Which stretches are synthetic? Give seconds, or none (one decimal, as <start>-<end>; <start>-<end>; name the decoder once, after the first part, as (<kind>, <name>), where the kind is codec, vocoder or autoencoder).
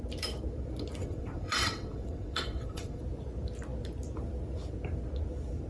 1.0-3.0 (vocoder, WaveNeXt)